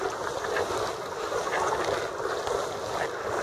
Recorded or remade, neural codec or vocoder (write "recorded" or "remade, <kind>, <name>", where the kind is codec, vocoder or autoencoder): recorded